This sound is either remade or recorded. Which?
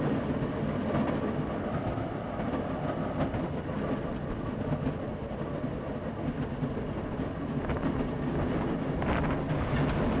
recorded